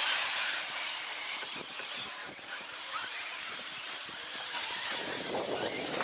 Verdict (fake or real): fake